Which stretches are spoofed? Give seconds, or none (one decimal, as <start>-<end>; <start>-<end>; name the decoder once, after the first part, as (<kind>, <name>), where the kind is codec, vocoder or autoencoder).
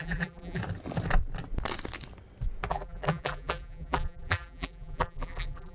0.0-0.6 (vocoder, BigVGAN v2); 2.7-5.7